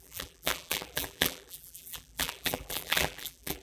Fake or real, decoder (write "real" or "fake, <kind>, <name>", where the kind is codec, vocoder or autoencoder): fake, vocoder, BigVGAN v2